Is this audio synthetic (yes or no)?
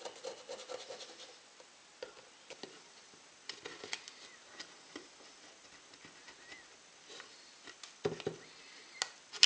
no